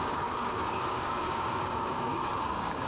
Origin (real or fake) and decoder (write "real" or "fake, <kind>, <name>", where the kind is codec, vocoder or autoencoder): fake, codec, DAC